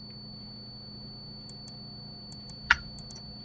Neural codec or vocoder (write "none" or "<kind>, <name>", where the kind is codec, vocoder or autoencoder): none